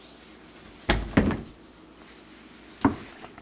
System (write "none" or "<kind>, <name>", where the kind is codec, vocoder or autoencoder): none